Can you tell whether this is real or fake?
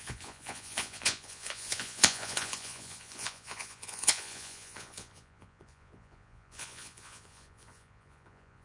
fake